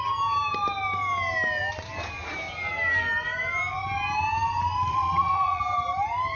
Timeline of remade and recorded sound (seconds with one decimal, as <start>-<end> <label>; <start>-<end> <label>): 0.0-4.9 recorded; 4.9-5.6 remade; 5.6-6.4 recorded